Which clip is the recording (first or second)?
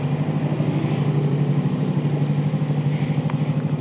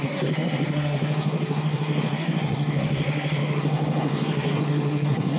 first